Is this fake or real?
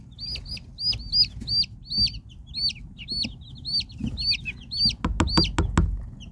real